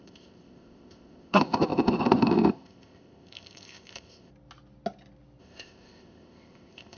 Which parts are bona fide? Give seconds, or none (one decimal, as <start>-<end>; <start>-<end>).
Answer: 4.3-5.4